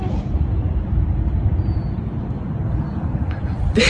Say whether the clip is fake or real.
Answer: fake